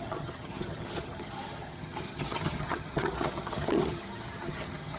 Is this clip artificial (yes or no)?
yes